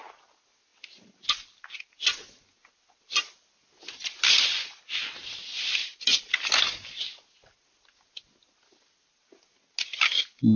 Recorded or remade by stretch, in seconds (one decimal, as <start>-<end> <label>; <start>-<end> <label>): 0.0-10.6 recorded